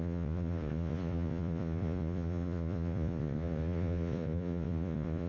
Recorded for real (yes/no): no